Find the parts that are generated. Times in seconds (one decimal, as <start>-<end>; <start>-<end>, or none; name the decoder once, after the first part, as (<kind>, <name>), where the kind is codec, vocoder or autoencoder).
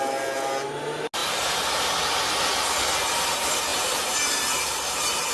3.7-5.3 (vocoder, BigVGAN v2)